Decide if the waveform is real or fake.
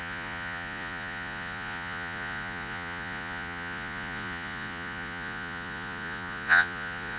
fake